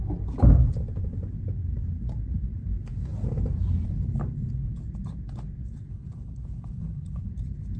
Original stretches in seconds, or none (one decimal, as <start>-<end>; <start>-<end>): 0.0-5.9; 7.3-7.8